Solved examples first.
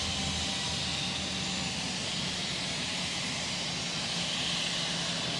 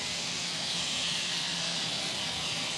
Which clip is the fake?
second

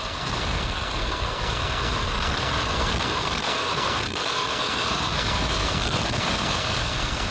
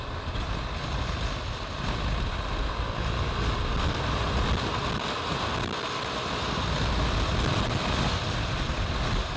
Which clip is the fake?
first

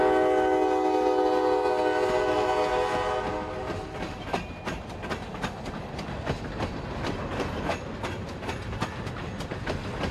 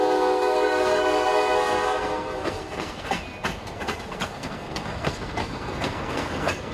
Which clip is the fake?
second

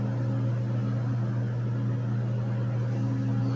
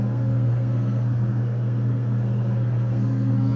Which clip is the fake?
second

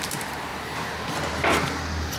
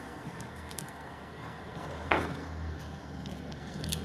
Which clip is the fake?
second